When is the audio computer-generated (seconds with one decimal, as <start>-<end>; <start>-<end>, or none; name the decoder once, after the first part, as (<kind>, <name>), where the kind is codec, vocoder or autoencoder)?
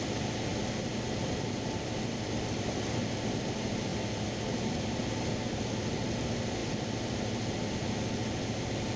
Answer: none